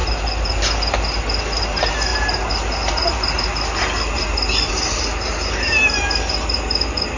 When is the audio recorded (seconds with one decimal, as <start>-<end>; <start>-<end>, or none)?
0.0-7.2